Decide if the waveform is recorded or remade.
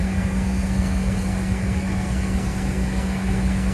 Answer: remade